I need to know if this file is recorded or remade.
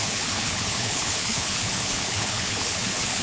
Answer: remade